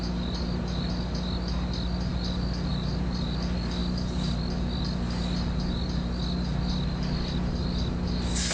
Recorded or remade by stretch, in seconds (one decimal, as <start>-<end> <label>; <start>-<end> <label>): 0.0-8.5 recorded